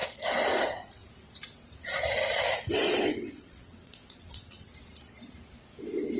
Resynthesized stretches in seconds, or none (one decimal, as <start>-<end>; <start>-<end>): 0.6-1.0; 2.9-4.7